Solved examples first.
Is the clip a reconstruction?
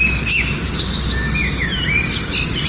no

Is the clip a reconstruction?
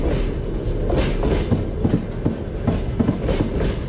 no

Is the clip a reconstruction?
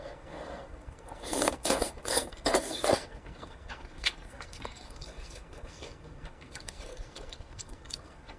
yes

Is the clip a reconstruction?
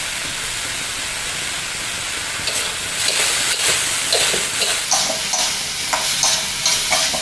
no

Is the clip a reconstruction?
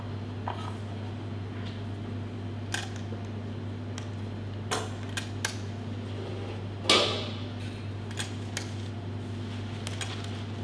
no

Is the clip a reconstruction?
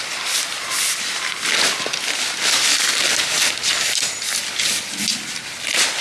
no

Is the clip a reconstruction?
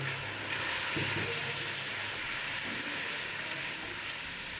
no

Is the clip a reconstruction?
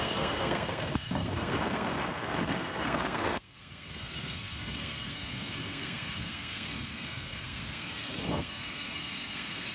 yes